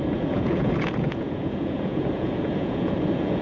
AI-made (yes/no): yes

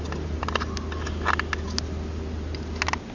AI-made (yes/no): no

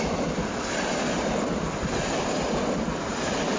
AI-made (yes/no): no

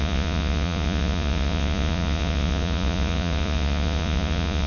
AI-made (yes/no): yes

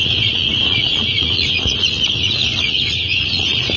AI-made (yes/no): yes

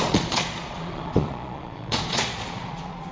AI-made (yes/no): yes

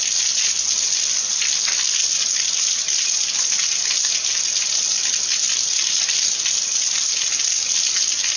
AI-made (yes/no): no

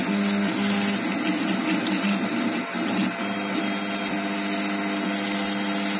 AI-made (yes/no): no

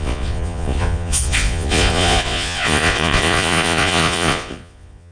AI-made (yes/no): yes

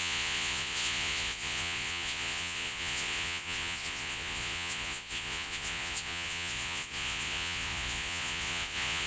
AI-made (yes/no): yes